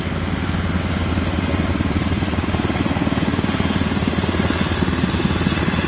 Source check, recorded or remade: recorded